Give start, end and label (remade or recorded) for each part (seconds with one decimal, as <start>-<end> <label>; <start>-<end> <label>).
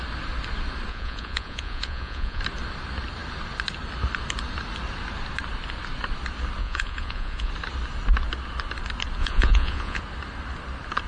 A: 0.0-0.9 recorded; 0.9-2.4 remade; 2.4-6.6 recorded; 6.6-7.5 remade; 7.5-9.2 recorded; 9.2-10.0 remade; 10.0-11.1 recorded